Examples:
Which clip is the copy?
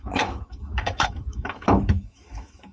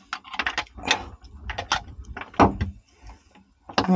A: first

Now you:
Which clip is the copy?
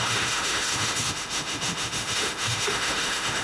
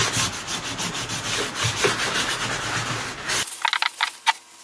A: first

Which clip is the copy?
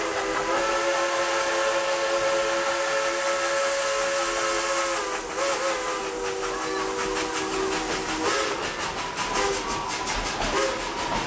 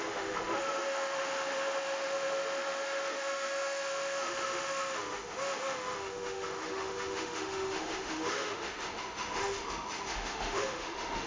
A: second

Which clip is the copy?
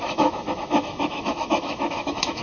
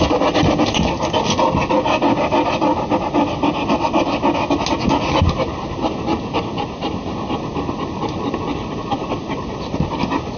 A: first